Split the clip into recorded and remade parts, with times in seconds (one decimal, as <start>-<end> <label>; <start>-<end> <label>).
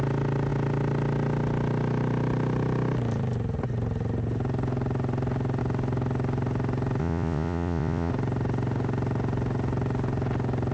0.0-7.0 recorded; 7.0-8.1 remade; 8.1-10.7 recorded